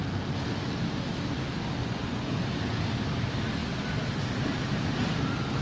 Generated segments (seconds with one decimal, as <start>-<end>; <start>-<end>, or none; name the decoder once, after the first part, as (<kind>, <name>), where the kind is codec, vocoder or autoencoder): 1.8-2.4 (vocoder, Vocos)